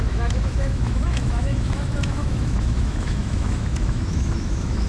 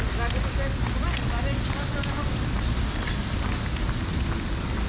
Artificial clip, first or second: first